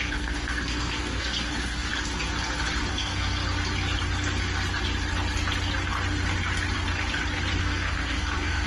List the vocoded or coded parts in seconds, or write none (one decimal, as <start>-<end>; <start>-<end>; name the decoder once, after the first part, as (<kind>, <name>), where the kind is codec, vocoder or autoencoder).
0.0-1.9 (codec, SNAC); 2.9-3.4; 7.6-8.7